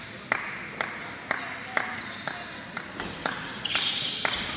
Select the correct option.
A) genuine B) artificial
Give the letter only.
A